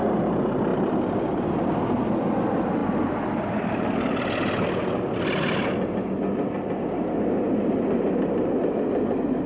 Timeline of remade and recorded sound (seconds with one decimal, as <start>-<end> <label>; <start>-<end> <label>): 0.0-9.5 recorded